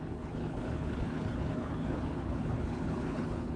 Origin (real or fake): fake